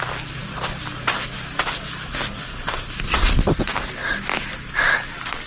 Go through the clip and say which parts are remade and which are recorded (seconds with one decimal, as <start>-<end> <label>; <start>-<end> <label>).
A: 0.0-5.5 recorded